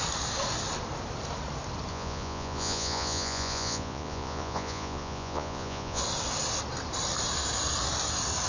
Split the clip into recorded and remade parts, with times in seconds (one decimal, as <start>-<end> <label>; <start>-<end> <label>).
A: 0.0-1.9 recorded; 1.9-6.0 remade; 6.0-8.5 recorded